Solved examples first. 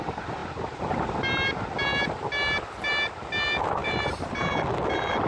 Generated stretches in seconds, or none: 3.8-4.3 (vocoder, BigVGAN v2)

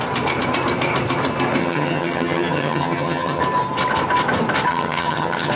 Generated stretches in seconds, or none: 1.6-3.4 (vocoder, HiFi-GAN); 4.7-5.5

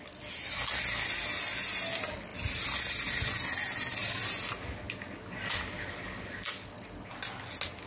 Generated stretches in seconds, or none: none

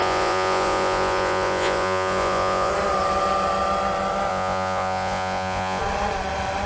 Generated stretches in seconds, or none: 0.0-2.7 (vocoder, Vocos); 4.3-5.8

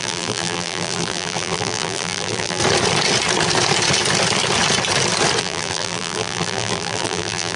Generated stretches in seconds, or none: 0.0-2.6 (vocoder, BigVGAN v2); 5.4-7.6

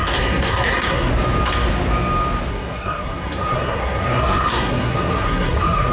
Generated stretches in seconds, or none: 0.0-1.1 (codec, SNAC); 2.5-5.9